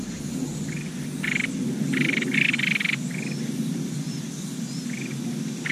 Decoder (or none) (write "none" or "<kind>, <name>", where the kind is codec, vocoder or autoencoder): none